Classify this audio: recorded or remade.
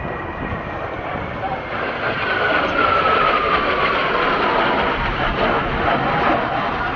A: recorded